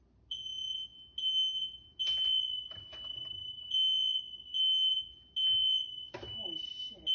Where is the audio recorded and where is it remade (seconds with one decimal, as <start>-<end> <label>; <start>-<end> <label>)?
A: 0.0-7.1 recorded